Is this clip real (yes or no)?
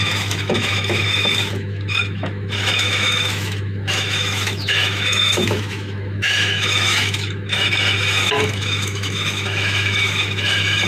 no